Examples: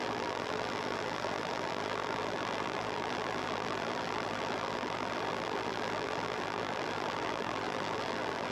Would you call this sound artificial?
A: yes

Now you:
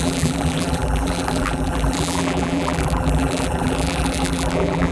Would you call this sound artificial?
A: yes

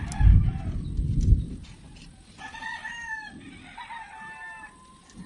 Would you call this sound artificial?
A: no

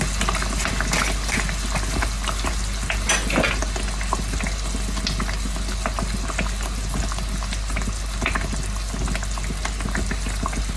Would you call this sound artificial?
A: no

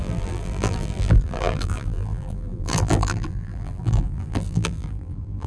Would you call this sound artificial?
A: yes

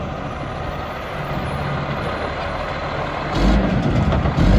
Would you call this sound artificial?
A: no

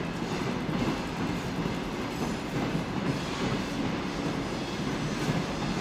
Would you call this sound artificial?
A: no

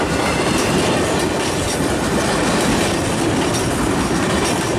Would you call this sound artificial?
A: no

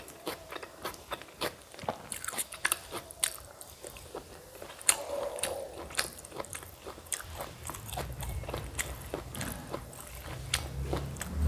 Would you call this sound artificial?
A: yes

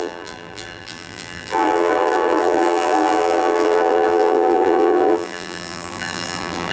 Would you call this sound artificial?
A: yes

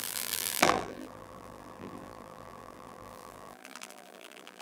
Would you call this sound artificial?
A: yes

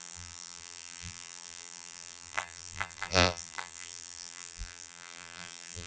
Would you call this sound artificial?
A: yes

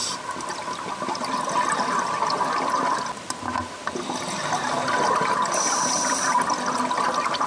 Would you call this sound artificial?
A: no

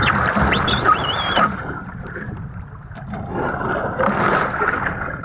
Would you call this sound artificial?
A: yes